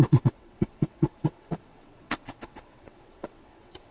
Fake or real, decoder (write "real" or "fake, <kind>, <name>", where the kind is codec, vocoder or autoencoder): fake, vocoder, WaveNeXt